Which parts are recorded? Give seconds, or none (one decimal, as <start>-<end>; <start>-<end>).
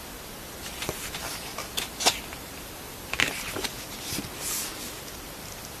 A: 0.0-1.2; 4.2-4.7